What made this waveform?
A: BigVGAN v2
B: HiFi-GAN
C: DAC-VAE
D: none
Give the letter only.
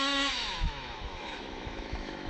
C